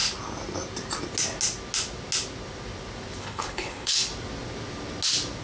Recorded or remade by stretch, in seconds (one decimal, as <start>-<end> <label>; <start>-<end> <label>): 0.0-3.2 recorded; 3.2-4.1 remade; 4.1-5.4 recorded